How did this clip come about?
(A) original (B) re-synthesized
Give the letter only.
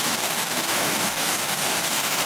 B